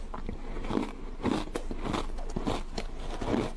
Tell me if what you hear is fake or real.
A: real